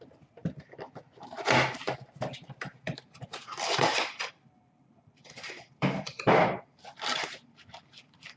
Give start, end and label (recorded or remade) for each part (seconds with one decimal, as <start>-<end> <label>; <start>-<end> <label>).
0.0-0.4 remade; 0.4-3.3 recorded; 3.3-8.4 remade